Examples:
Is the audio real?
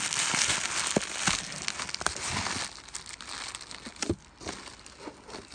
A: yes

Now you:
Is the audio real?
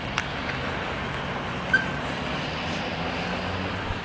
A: yes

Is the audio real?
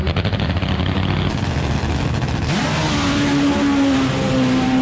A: yes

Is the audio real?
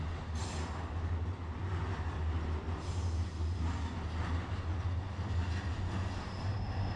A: yes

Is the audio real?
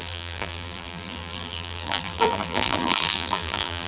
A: no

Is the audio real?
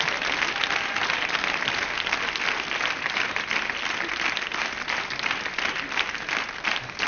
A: yes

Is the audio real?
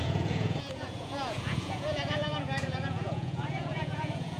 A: no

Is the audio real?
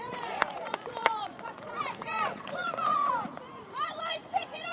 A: no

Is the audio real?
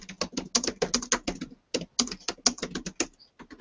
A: yes